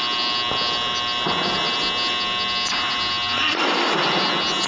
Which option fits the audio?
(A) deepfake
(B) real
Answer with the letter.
B